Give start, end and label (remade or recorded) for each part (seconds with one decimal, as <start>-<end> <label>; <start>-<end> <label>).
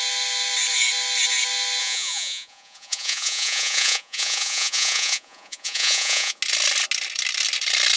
0.0-1.8 recorded; 1.8-6.4 remade; 6.4-8.0 recorded